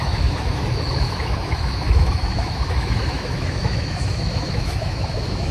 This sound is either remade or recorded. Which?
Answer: remade